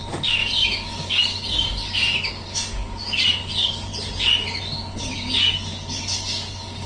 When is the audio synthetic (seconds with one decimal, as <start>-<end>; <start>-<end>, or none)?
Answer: 0.0-3.9; 5.0-6.9